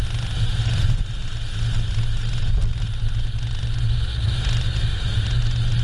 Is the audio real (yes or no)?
yes